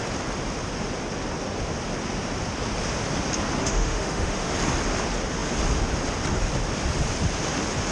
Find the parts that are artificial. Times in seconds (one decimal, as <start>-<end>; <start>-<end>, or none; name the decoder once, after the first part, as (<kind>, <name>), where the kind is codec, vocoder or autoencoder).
3.6-4.5 (autoencoder, DAC-VAE)